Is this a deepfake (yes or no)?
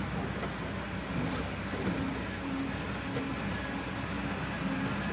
no